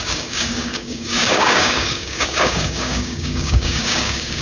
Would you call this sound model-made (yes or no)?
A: yes